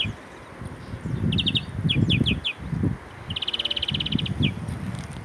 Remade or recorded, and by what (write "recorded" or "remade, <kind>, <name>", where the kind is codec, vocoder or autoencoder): recorded